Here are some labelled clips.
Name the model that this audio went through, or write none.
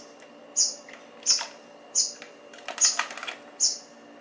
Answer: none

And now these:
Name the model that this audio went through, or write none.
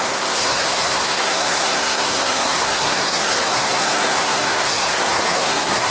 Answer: codec, SNAC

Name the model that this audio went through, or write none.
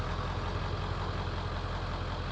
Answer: none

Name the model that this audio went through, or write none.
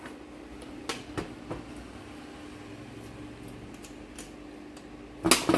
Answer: none